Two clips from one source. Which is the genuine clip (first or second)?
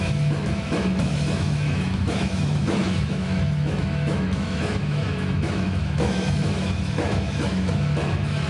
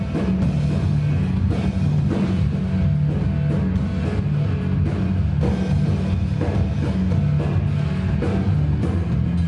second